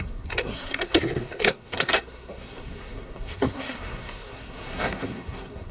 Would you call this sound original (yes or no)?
no